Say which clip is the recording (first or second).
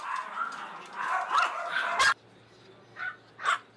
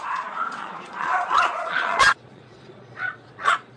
first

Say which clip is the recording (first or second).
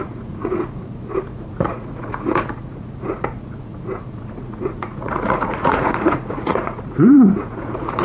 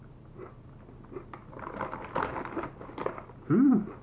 second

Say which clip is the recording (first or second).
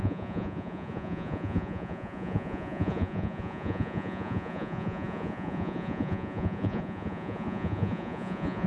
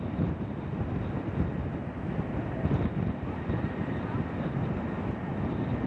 second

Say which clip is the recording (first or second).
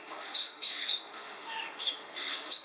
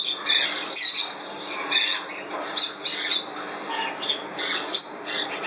second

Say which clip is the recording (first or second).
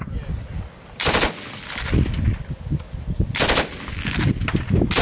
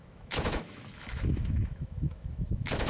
first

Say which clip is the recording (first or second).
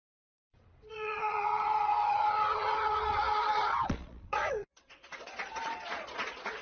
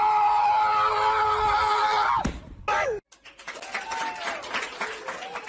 second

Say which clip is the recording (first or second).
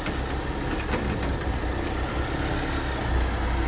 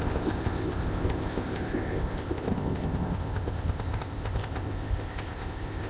first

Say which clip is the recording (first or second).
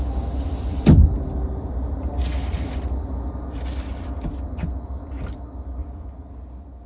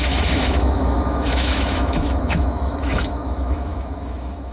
first